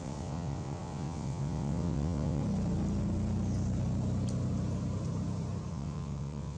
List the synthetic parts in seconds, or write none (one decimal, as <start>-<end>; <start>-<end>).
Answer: 0.0-2.4; 5.7-6.6